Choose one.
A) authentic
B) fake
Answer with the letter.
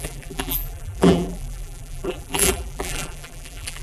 B